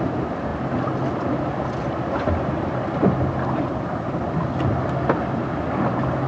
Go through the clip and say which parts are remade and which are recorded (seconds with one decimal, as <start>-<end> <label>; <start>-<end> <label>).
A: 0.0-6.3 recorded